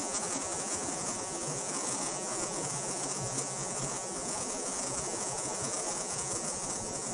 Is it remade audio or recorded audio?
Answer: remade